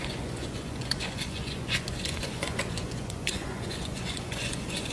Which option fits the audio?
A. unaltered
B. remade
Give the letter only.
B